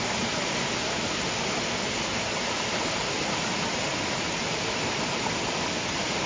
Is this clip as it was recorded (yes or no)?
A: yes